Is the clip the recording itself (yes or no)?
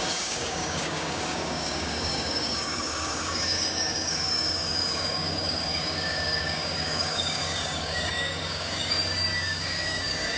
no